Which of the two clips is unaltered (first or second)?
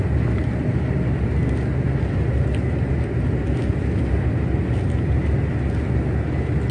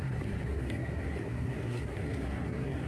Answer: first